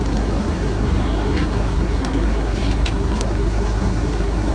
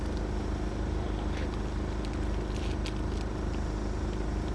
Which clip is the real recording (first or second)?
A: second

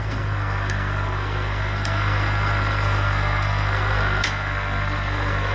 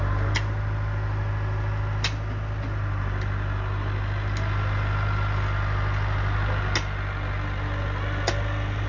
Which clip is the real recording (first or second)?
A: second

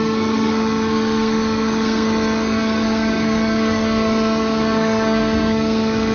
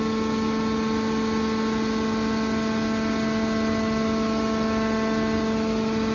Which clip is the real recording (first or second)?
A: second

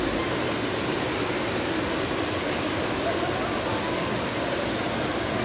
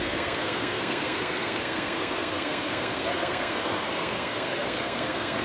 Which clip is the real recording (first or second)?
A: first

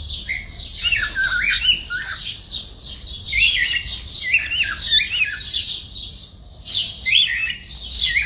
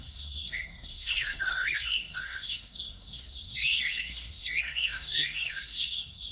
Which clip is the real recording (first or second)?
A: first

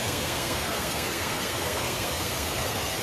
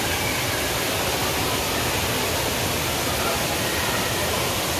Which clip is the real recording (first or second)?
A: second